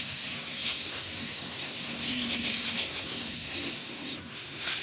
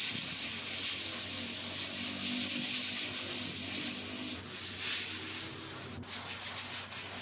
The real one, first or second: second